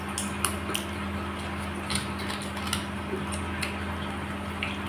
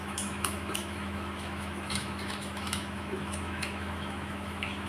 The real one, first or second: first